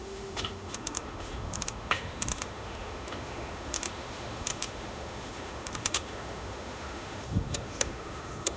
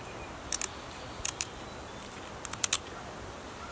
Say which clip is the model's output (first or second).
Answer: first